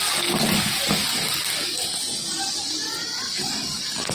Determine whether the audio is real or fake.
real